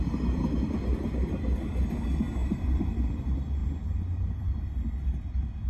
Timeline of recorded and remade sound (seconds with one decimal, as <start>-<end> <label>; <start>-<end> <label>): 0.0-5.7 recorded

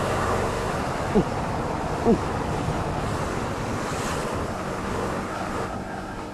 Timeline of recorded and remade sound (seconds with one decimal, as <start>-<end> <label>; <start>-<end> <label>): 0.0-0.7 remade; 0.7-4.5 recorded; 4.5-6.3 remade

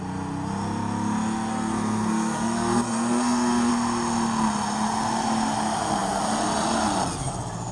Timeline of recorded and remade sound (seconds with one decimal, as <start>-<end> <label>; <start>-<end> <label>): 0.0-1.5 recorded; 1.5-3.7 remade; 3.7-7.7 recorded